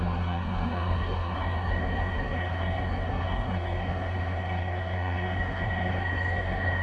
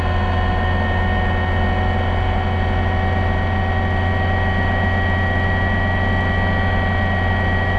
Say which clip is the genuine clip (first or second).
second